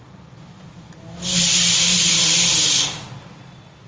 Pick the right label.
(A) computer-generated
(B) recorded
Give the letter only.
B